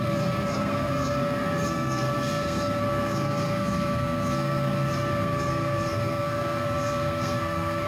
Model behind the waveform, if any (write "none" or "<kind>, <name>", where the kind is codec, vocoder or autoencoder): codec, SNAC